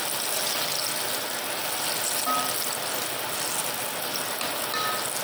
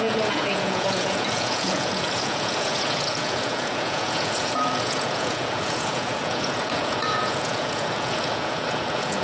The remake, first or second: second